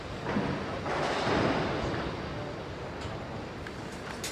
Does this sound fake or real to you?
real